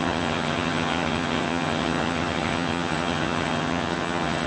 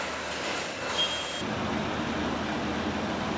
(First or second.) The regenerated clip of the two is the first